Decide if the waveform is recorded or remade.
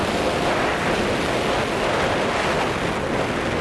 recorded